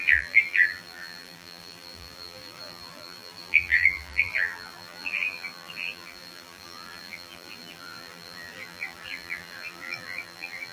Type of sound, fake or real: fake